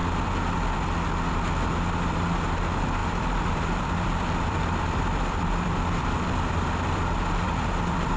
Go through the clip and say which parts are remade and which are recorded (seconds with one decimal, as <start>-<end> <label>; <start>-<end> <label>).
0.0-3.0 recorded; 3.0-8.2 remade